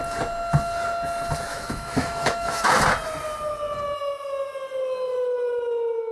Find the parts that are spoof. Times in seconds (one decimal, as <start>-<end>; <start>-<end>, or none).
1.5-2.7